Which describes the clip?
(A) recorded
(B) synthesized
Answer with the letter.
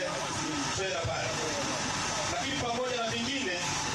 B